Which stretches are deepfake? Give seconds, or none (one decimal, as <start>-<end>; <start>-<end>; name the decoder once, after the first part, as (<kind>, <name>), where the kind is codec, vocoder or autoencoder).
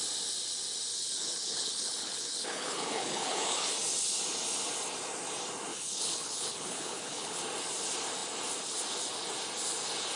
0.9-3.7 (codec, HILCodec); 5.7-7.4